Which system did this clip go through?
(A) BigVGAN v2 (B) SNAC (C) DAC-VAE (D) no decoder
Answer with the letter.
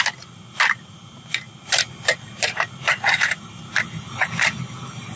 A